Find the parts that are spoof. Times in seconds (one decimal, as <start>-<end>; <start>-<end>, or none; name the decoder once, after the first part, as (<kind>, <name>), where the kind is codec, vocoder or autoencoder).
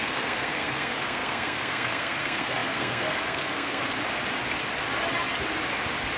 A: 0.0-3.8 (codec, SNAC)